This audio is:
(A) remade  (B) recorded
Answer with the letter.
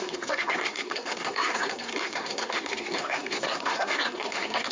A